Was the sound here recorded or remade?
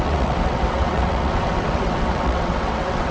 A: remade